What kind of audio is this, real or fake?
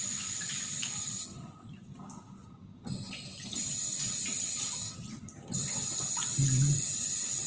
real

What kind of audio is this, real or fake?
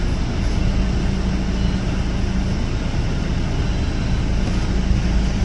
real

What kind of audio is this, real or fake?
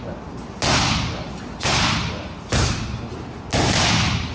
real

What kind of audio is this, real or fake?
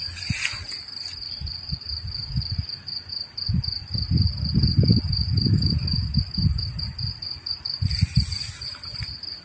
real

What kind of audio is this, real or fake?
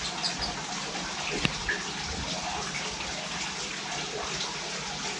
real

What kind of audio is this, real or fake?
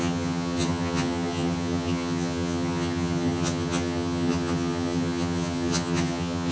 fake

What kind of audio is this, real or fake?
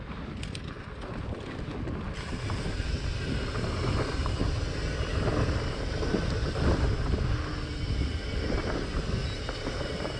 real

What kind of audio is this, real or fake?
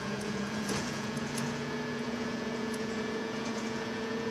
fake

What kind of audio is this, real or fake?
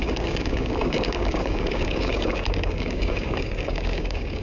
fake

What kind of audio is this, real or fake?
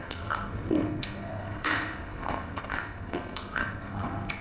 fake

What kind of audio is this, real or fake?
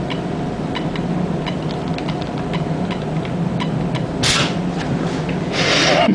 real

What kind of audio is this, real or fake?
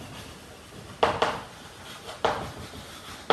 real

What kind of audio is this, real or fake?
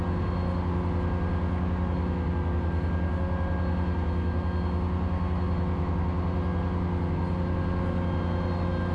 real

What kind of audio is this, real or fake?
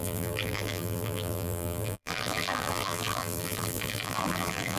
fake